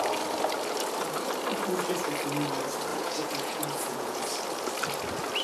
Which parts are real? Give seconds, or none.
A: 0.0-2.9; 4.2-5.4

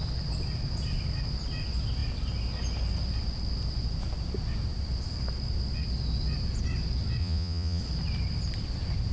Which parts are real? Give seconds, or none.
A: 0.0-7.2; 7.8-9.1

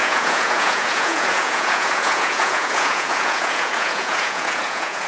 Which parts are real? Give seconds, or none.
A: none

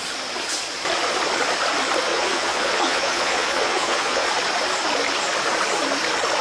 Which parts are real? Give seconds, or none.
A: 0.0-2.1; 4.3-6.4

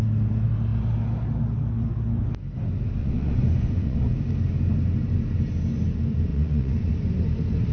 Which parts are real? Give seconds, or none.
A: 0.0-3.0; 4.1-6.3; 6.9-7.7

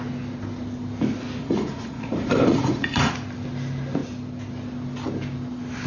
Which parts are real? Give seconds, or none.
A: 0.0-1.4; 3.1-5.9